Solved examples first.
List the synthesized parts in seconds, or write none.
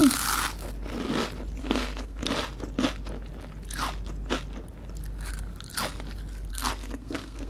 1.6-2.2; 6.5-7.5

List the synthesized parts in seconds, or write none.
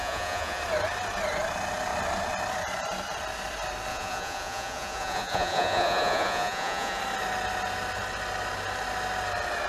0.0-0.6; 3.9-7.0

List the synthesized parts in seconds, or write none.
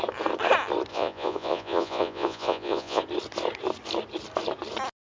0.9-3.0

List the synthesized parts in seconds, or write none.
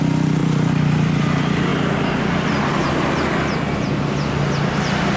0.4-1.2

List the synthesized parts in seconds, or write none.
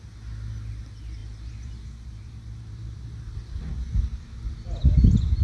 1.2-4.4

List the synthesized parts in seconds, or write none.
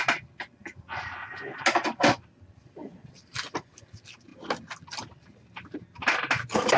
none